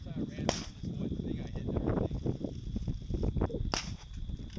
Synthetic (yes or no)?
no